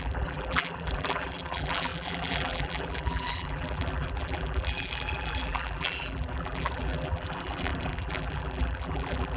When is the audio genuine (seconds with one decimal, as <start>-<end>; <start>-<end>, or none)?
none